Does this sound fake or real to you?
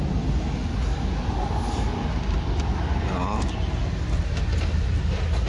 real